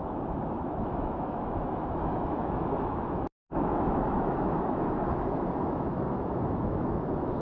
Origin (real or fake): fake